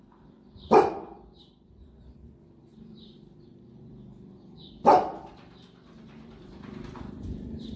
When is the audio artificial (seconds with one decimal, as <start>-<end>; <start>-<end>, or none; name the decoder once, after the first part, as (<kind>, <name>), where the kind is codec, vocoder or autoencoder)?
0.0-7.8 (vocoder, BigVGAN v2)